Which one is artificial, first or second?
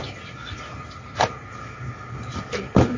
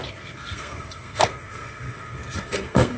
second